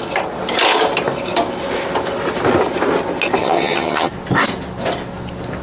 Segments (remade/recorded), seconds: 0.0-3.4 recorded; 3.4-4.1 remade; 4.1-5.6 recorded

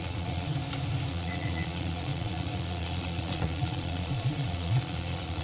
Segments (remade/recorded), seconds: 0.0-0.5 remade; 0.5-1.1 recorded; 1.1-5.4 remade

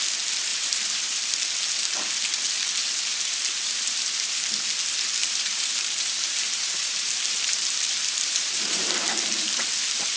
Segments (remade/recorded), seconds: 0.0-0.5 recorded; 0.5-1.2 remade; 1.2-2.8 recorded; 2.8-4.4 remade; 4.4-5.2 recorded; 5.2-8.9 remade; 8.9-10.2 recorded

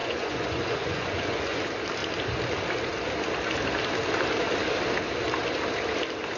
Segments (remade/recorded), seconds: 0.0-1.6 remade; 1.6-6.4 recorded